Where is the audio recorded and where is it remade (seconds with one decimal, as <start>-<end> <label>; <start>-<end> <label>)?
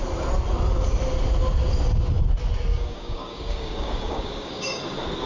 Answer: 0.0-2.7 recorded; 2.7-4.8 remade; 4.8-5.3 recorded